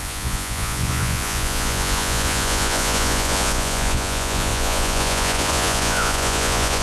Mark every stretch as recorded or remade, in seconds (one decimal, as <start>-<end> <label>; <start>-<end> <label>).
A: 0.0-6.8 remade